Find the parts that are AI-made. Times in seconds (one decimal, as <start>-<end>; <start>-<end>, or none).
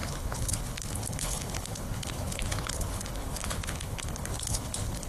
0.0-5.1